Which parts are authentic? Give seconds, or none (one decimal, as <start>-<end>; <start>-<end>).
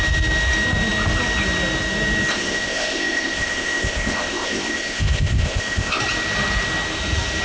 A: 0.0-2.3; 6.0-7.4